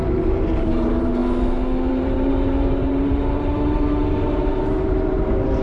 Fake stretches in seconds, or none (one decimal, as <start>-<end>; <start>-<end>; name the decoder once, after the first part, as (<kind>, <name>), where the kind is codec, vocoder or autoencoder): 0.0-1.2 (vocoder, BigVGAN v2); 1.9-5.6